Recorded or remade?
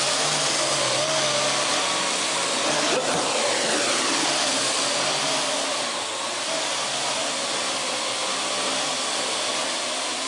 recorded